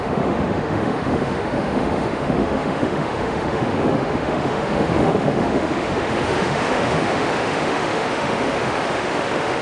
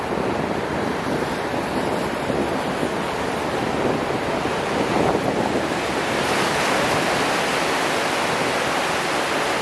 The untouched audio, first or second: second